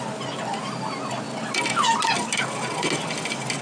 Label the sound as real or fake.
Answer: real